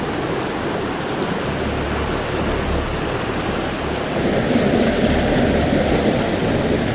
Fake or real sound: real